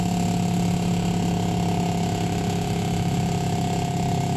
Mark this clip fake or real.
real